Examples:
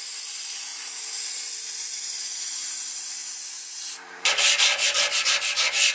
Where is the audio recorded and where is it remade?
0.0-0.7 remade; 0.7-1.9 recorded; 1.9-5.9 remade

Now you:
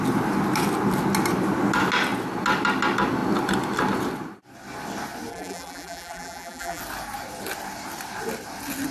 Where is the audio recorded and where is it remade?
0.0-5.3 recorded; 5.3-6.8 remade; 6.8-8.9 recorded

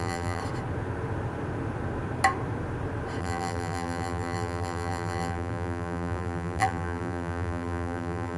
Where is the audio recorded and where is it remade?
0.0-0.4 remade; 0.4-3.2 recorded; 3.2-8.4 remade

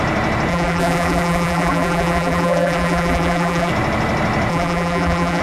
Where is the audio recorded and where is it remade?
0.0-0.5 recorded; 0.5-3.7 remade; 3.7-4.5 recorded; 4.5-5.4 remade

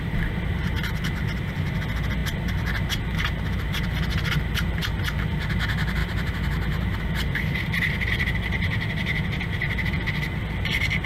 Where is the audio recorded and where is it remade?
0.0-6.0 recorded; 6.0-8.1 remade; 8.1-11.1 recorded